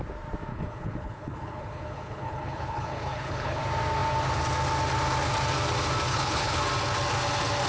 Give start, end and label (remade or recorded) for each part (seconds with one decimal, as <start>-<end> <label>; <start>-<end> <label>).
0.0-0.5 recorded; 0.5-3.6 remade; 3.6-6.1 recorded; 6.1-6.6 remade; 6.6-7.7 recorded